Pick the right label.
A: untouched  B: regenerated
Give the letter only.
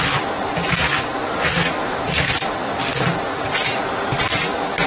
A